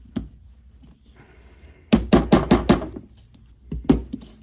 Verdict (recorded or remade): recorded